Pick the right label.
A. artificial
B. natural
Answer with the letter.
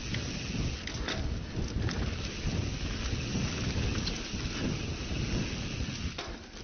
B